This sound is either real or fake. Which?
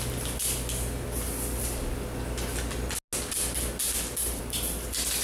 real